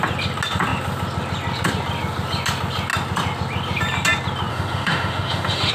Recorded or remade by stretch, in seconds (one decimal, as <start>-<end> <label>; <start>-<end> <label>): 0.0-4.5 recorded; 4.5-5.7 remade